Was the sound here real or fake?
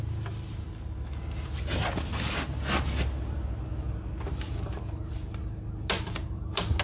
real